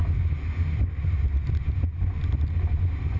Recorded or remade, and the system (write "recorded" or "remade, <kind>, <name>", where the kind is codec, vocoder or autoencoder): recorded